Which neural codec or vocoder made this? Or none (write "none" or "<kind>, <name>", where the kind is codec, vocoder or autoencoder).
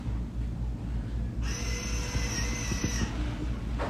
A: none